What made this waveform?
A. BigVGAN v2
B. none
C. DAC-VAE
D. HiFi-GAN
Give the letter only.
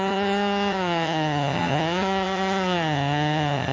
D